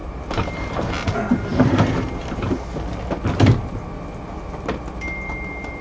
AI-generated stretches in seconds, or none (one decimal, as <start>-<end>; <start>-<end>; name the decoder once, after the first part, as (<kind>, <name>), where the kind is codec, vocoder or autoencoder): 0.0-0.9 (vocoder, BigVGAN v2); 1.5-2.5